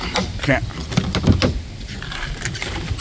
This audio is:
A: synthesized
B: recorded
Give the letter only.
B